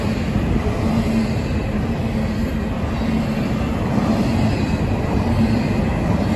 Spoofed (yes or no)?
no